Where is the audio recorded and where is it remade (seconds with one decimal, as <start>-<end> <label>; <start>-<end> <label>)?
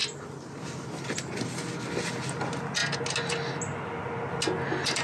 0.0-5.0 recorded